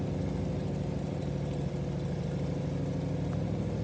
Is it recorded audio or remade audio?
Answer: recorded